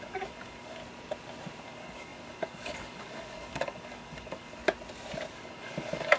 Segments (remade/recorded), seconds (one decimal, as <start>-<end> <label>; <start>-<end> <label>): 0.0-0.8 remade; 0.8-1.6 recorded; 1.6-4.6 remade; 4.6-5.3 recorded; 5.3-6.2 remade